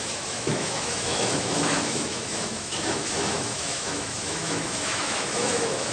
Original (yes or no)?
no